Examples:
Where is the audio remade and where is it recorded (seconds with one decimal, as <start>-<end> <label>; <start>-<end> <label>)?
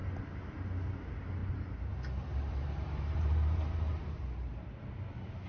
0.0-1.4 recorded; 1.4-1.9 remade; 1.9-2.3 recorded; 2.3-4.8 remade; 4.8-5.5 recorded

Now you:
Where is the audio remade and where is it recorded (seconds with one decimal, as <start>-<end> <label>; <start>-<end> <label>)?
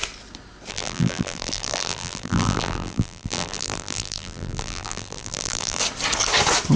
0.0-0.7 recorded; 0.7-5.8 remade; 5.8-6.8 recorded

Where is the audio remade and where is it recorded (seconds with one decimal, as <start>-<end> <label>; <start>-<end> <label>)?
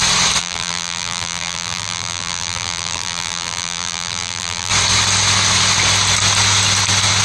0.0-0.4 recorded; 0.4-4.7 remade; 4.7-7.2 recorded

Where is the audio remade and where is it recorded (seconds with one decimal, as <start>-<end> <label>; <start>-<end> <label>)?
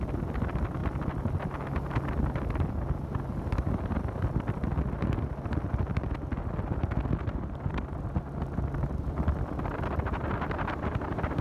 0.0-11.4 recorded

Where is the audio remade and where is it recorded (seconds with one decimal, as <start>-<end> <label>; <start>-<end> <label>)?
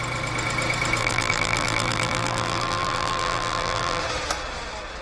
0.0-1.0 recorded; 1.0-4.0 remade; 4.0-5.0 recorded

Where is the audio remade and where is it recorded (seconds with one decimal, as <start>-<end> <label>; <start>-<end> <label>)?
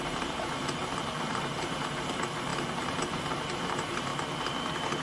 0.0-4.1 remade; 4.1-5.0 recorded